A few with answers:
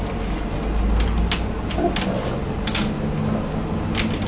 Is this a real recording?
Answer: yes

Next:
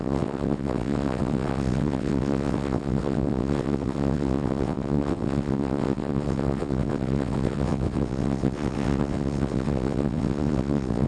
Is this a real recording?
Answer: no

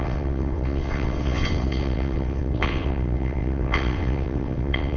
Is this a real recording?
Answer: no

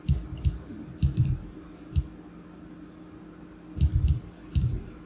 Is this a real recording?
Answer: yes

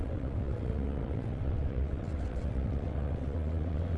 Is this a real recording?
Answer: no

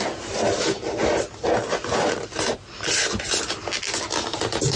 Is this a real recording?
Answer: yes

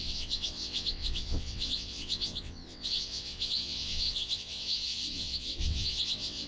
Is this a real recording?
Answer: no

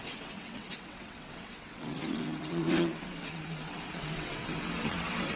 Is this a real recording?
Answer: no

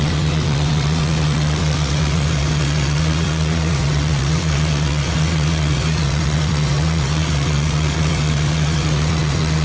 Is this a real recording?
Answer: no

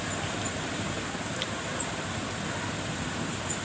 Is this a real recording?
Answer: yes